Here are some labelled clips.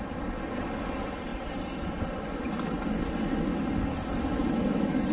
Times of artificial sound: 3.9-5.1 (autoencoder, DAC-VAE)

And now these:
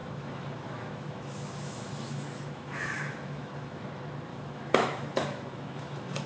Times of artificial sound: 0.0-3.8 (autoencoder, DAC-VAE); 4.3-6.3

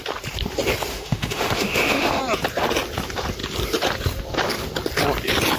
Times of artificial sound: 0.9-2.2 (autoencoder, DAC-VAE)

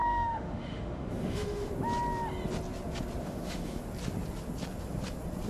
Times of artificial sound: 0.0-1.7 (autoencoder, DAC-VAE); 3.2-3.8